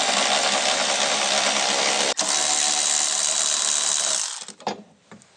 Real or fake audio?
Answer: real